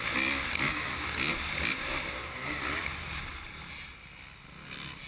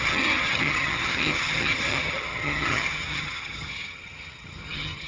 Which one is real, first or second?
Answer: first